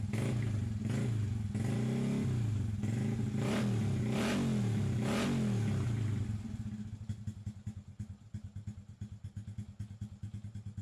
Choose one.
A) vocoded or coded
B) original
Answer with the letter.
B